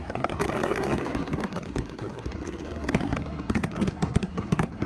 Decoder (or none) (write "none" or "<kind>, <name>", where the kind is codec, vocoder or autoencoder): codec, SNAC